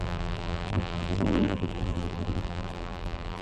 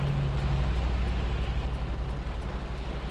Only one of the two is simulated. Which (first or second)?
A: first